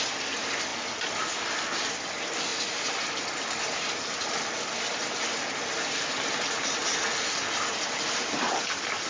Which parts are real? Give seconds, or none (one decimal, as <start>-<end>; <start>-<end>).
0.0-9.1